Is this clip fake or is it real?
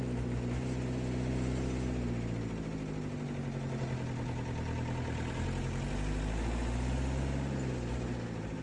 real